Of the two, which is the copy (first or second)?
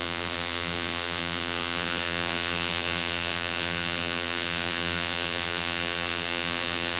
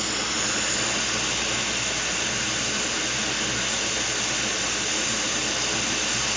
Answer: first